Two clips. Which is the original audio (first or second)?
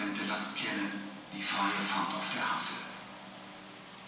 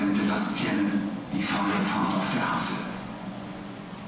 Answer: first